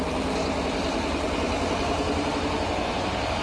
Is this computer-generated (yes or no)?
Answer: no